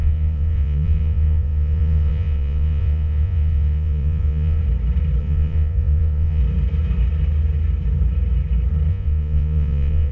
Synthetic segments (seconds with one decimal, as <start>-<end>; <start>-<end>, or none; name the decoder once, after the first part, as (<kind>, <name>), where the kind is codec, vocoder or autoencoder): 0.0-4.6 (vocoder, Vocos); 5.2-6.4; 8.9-10.1